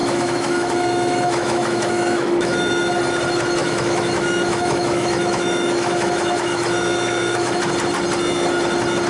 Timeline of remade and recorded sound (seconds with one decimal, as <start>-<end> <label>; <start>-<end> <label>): 0.0-3.0 remade; 3.0-3.6 recorded; 3.6-7.6 remade; 7.6-9.1 recorded

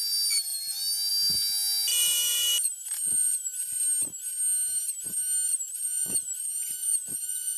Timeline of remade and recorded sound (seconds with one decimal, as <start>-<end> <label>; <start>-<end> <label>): 0.0-1.9 recorded; 1.9-3.8 remade; 3.8-5.5 recorded; 5.5-7.6 remade